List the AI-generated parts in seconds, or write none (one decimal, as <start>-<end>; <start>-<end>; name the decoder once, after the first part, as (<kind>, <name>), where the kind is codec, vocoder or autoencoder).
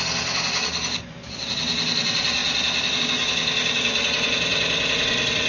none